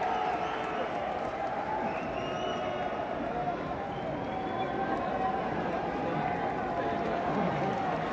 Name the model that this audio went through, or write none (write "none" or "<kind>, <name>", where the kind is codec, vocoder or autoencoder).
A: none